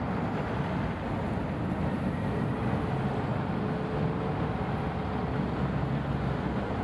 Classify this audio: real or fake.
real